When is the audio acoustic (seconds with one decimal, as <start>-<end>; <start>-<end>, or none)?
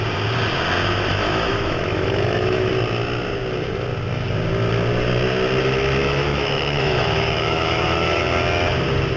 0.0-1.1; 2.7-6.0; 8.2-9.2